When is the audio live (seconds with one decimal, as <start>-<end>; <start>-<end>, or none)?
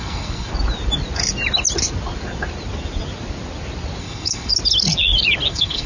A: 0.5-4.0; 4.5-5.5